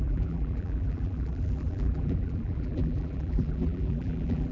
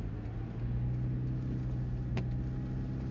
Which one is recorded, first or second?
second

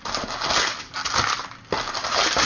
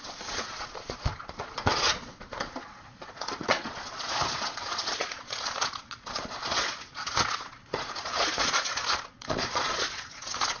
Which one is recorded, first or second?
first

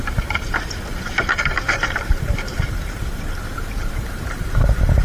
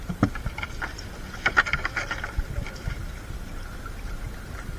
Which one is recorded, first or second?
second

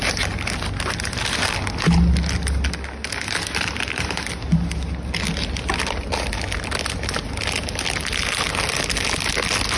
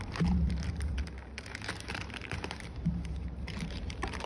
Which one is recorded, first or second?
first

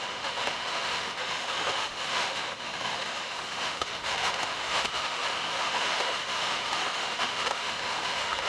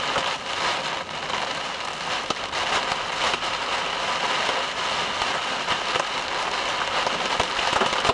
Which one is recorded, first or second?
second